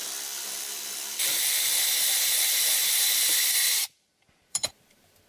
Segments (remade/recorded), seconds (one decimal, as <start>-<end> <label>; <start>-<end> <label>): 0.0-2.1 recorded; 2.1-5.3 remade